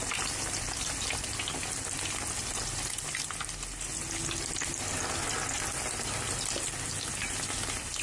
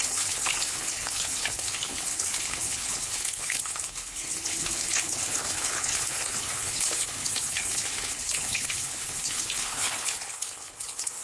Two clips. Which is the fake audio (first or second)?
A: second